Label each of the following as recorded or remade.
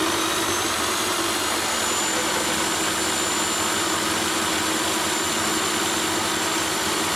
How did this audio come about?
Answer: recorded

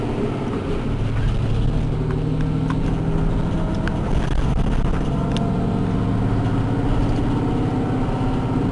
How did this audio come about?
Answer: recorded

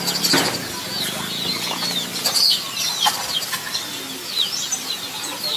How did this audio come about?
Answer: recorded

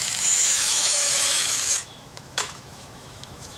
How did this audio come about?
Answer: remade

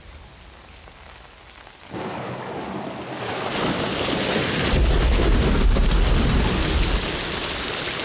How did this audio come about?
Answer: recorded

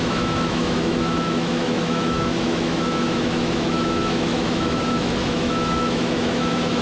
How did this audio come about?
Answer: remade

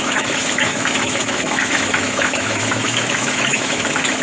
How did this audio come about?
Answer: remade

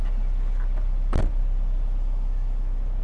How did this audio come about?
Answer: recorded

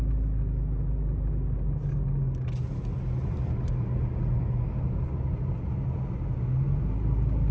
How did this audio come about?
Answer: recorded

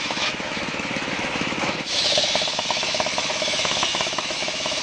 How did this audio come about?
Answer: remade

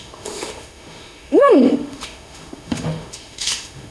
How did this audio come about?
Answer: remade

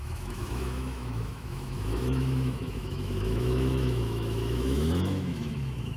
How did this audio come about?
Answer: remade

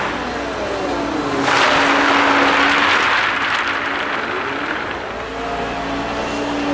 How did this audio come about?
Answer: recorded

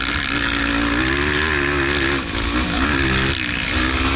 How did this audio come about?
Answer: recorded